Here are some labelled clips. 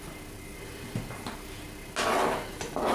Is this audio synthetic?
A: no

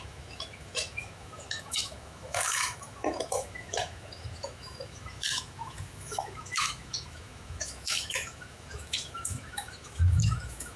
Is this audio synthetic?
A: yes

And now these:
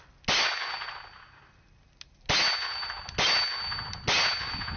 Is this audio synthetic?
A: no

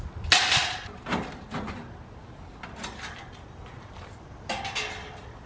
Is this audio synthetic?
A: no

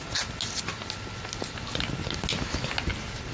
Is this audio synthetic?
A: no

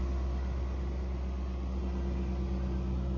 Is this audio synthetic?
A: no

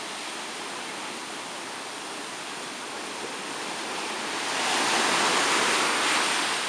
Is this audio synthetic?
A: no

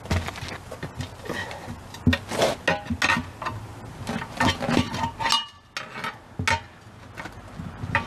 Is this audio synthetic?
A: no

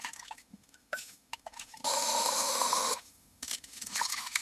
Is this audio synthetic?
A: yes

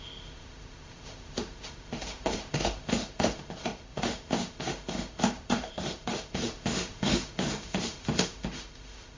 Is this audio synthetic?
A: yes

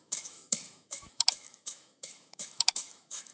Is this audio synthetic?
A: yes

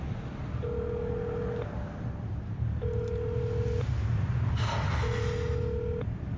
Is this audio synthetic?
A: no